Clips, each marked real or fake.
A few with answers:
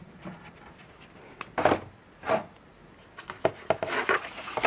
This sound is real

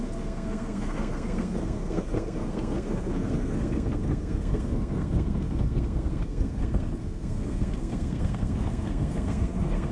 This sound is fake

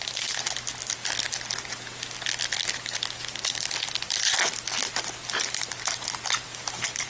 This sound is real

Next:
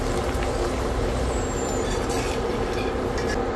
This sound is real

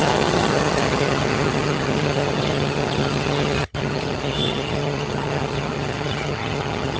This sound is fake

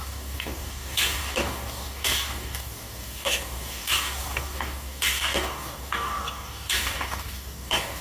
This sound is fake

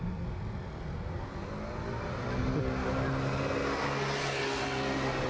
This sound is real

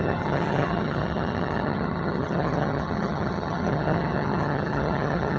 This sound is fake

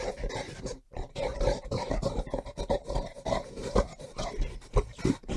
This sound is fake